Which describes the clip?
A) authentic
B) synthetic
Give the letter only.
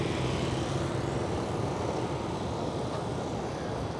A